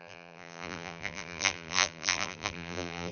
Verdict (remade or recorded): remade